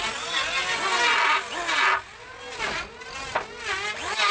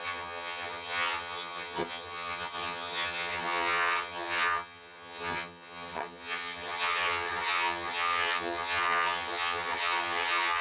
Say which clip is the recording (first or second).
first